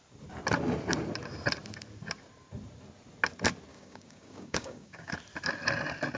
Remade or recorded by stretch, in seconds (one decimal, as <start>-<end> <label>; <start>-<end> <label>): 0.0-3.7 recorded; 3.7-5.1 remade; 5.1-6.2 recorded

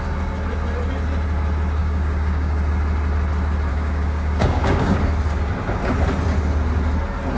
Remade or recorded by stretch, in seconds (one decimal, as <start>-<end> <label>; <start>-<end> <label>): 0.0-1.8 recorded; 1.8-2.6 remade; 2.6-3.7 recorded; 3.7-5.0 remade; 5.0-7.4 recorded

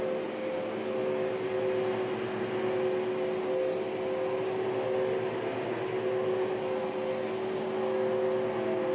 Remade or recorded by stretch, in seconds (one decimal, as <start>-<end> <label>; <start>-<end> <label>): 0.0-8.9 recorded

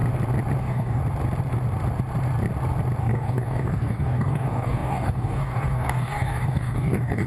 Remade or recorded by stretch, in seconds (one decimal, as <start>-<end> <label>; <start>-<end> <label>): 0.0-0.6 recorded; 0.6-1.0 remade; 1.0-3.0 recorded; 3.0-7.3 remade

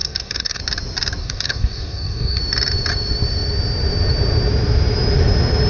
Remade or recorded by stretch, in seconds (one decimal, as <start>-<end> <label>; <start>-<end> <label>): 0.0-0.6 remade; 0.6-1.2 recorded; 1.2-2.4 remade; 2.4-5.7 recorded

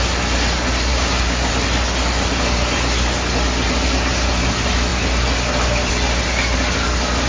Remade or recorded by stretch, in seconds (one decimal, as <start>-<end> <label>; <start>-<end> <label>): 0.0-0.9 recorded; 0.9-1.5 remade; 1.5-7.3 recorded

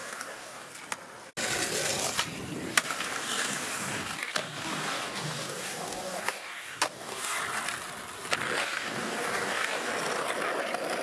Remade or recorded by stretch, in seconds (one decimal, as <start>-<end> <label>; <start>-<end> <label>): 0.0-0.7 remade; 0.7-2.7 recorded; 2.7-7.4 remade; 7.4-8.6 recorded; 8.6-9.9 remade; 9.9-11.0 recorded

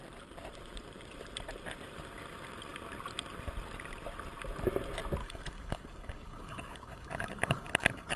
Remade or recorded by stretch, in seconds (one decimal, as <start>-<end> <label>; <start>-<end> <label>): 0.0-5.2 recorded; 5.2-8.2 remade